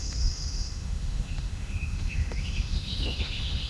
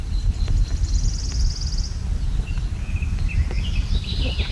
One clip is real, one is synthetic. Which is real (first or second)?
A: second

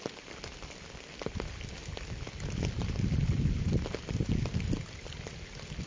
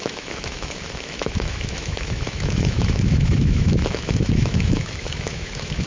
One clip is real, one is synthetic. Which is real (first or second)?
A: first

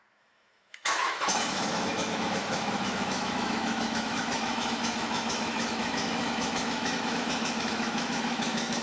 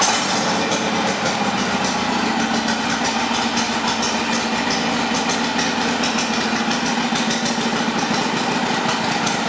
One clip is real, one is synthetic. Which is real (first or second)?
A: second